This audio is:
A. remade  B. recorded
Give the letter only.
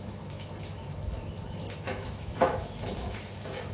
A